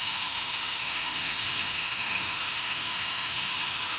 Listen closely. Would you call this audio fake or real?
fake